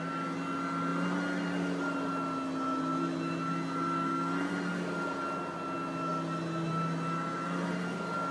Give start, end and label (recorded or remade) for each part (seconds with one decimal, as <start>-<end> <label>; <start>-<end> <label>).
0.0-8.3 recorded